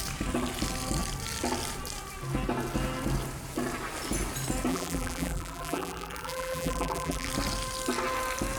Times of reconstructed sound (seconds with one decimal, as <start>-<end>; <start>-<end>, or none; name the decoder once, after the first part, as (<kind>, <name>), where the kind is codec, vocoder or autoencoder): 4.7-7.3 (vocoder, BigVGAN v2)